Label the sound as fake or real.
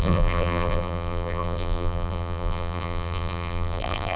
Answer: fake